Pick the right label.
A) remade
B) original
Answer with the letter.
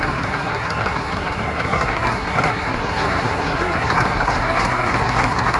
A